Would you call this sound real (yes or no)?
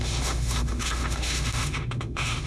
no